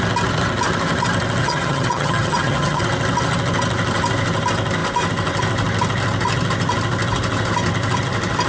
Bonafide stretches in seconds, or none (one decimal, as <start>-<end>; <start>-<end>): 0.0-1.4; 2.8-8.5